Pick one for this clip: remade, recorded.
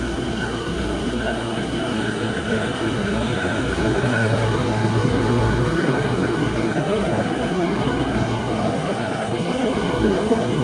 remade